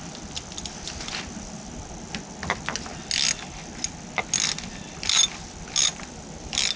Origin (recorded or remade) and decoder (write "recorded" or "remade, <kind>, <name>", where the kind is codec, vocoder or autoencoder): recorded